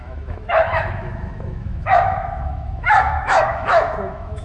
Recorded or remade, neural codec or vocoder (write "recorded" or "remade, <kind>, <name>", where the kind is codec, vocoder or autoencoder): remade, autoencoder, DAC-VAE